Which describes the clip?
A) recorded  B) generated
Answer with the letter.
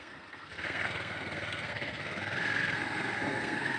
B